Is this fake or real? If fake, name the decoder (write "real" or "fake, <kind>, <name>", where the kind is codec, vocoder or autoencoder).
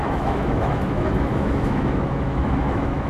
fake, autoencoder, DAC-VAE